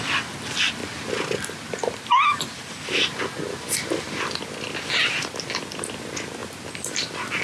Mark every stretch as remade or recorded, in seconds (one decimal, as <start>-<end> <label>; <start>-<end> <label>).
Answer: 0.0-7.4 recorded